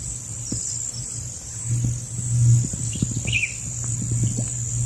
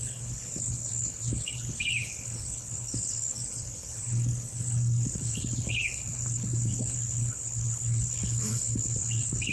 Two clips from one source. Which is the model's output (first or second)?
second